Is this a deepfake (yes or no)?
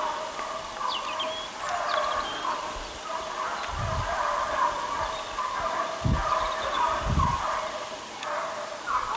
no